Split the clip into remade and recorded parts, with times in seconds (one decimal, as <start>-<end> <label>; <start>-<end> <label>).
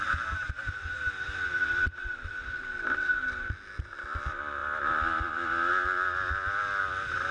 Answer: 0.0-4.6 recorded; 4.6-5.7 remade; 5.7-7.3 recorded